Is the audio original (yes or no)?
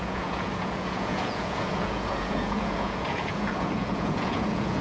no